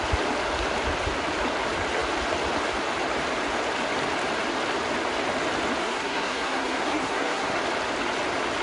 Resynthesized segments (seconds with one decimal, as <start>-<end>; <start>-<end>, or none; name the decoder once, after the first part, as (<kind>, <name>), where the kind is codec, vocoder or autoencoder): 5.8-7.6 (codec, SNAC)